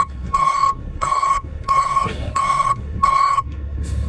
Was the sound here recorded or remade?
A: remade